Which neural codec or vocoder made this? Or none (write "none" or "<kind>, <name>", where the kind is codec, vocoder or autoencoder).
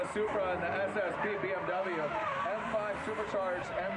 none